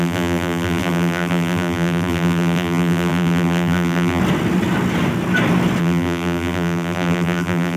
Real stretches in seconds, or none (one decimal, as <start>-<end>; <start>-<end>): 4.2-5.8